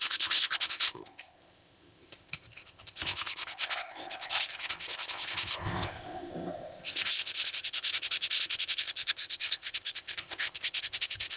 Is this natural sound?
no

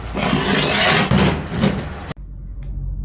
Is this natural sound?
yes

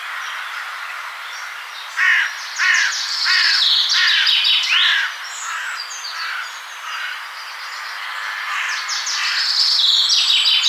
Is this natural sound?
yes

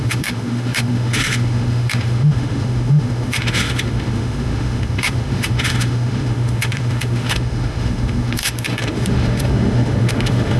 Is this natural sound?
no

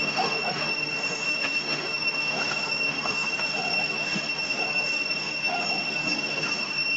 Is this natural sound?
no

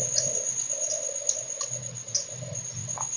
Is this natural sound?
yes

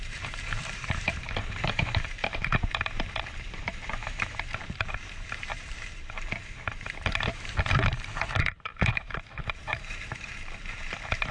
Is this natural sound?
no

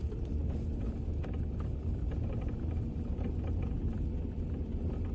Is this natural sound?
no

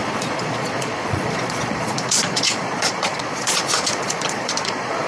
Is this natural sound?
no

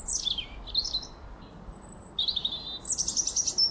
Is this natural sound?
yes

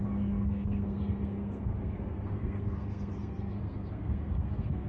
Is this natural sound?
no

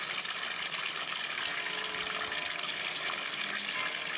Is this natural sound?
yes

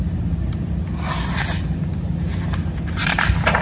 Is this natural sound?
yes